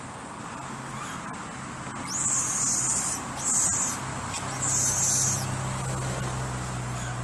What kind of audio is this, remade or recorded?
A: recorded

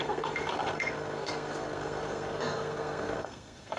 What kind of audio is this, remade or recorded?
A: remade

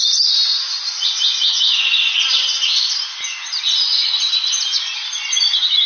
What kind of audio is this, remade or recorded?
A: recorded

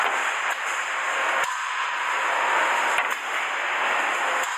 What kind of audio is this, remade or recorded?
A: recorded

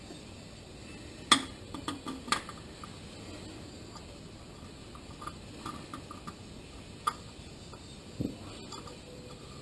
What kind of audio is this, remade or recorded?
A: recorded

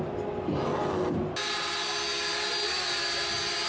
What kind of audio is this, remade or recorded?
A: recorded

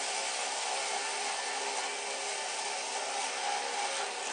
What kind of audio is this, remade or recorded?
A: recorded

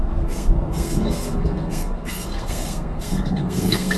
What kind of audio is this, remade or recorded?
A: remade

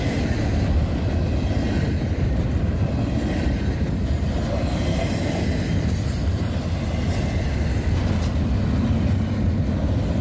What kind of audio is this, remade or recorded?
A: recorded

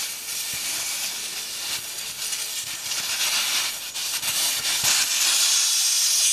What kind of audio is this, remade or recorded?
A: recorded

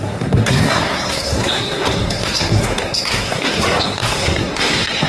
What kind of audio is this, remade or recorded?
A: remade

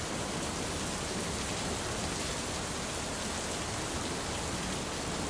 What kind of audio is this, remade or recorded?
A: recorded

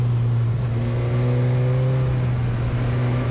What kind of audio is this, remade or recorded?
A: recorded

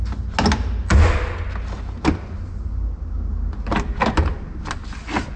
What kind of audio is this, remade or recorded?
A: recorded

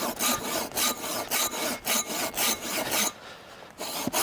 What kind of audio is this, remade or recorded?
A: recorded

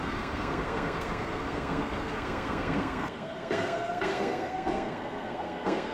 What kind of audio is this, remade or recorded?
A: remade